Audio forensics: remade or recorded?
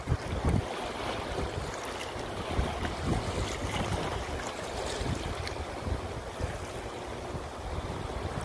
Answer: recorded